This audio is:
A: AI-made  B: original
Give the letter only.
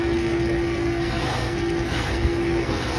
A